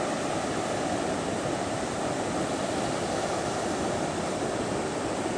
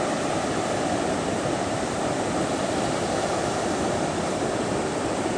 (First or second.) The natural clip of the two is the first